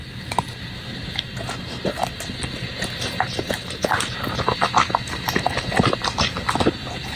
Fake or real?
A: real